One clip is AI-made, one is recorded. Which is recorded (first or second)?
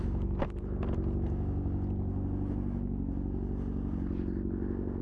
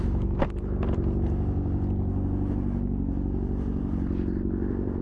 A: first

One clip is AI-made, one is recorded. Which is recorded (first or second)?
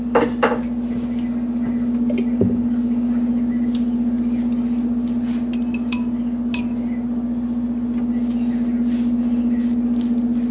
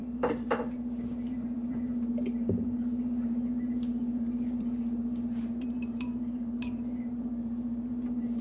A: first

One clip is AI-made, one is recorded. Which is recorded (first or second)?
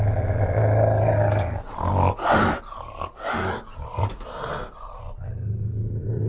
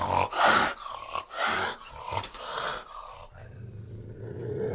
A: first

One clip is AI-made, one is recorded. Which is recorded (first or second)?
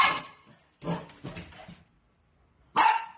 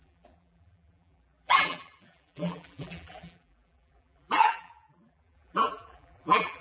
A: first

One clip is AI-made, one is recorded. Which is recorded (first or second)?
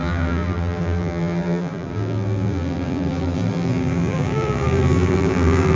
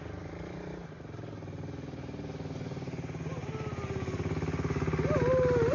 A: second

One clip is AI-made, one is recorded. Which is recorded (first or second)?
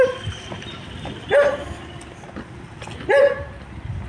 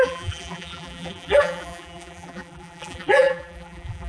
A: first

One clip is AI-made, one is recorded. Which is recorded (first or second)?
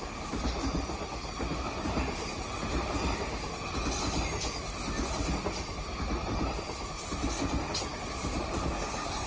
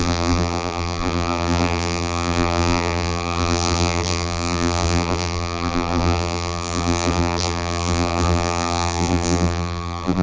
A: first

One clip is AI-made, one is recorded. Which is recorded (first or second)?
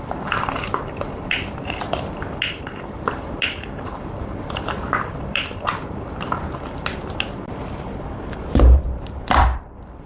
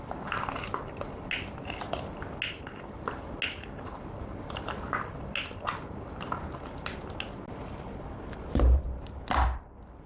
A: second